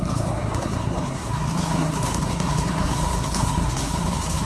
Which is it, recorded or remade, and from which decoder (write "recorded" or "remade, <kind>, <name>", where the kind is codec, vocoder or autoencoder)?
remade, codec, SNAC